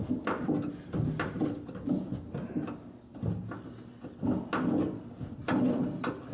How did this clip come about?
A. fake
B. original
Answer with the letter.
B